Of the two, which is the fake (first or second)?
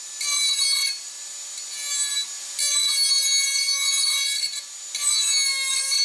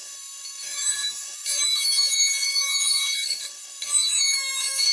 second